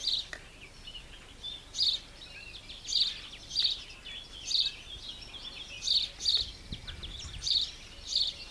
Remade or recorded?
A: recorded